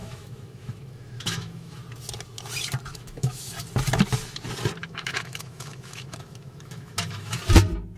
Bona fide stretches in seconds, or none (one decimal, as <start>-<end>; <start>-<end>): 1.8-2.9; 3.5-4.8; 7.4-8.0